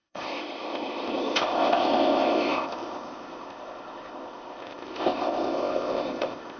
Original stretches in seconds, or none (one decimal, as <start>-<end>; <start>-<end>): none